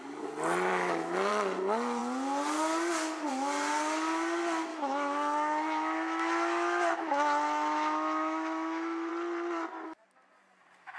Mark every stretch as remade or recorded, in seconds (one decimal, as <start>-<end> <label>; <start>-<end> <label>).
0.0-0.7 recorded; 0.7-1.3 remade; 1.3-4.7 recorded; 4.7-9.1 remade; 9.1-11.0 recorded